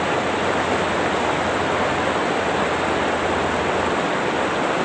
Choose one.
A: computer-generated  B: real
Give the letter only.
B